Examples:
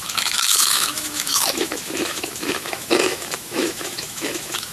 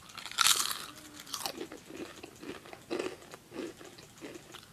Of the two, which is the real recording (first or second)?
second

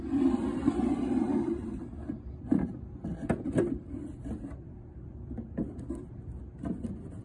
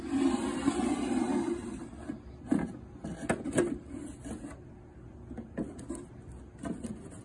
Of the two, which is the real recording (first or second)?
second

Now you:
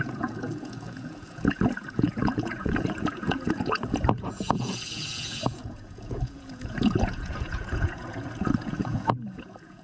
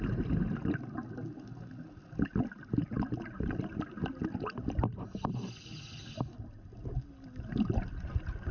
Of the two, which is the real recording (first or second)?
second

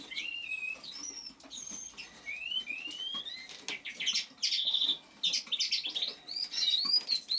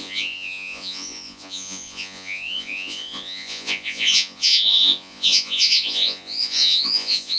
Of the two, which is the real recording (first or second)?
first